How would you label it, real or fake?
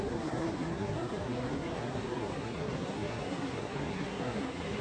fake